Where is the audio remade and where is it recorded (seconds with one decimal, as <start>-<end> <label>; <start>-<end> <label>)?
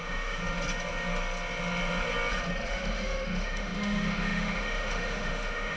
0.0-0.4 remade; 0.4-2.7 recorded; 2.7-5.8 remade